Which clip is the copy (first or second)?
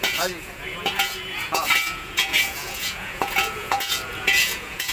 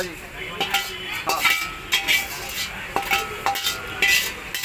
first